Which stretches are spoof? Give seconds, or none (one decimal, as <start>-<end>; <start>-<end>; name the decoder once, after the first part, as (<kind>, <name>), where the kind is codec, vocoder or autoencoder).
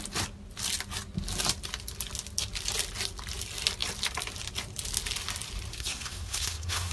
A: 5.7-6.9 (codec, SNAC)